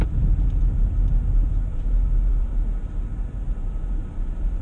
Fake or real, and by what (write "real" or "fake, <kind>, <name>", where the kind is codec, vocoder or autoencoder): real